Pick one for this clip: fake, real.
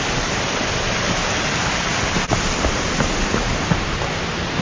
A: real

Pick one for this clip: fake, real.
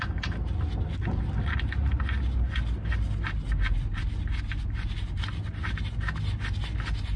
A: real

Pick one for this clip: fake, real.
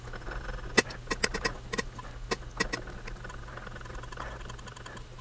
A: real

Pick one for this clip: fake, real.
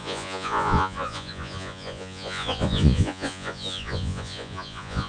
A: fake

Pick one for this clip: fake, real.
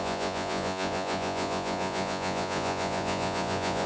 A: fake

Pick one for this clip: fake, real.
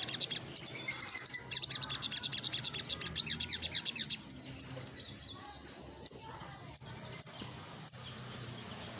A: real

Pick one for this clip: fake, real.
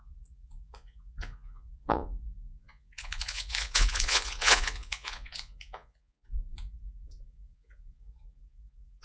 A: fake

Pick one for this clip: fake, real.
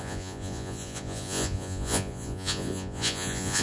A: fake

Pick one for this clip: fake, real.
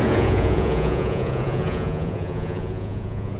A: fake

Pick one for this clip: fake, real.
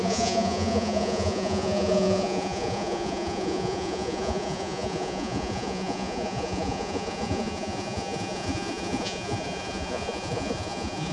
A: fake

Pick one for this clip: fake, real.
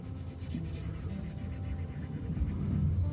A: real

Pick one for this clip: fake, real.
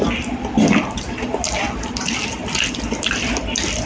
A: real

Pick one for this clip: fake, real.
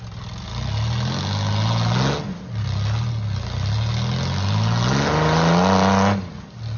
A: real